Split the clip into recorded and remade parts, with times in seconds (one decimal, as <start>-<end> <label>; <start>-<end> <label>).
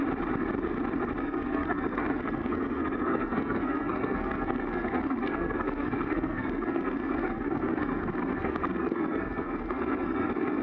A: 0.0-1.2 recorded; 1.2-10.6 remade